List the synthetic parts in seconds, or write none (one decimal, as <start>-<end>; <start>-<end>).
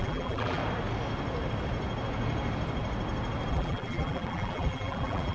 0.0-0.6; 3.5-5.3